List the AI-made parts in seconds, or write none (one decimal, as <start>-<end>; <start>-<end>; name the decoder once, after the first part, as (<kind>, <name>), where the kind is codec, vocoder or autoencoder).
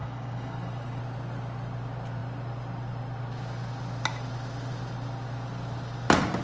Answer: 0.0-1.0 (codec, DAC)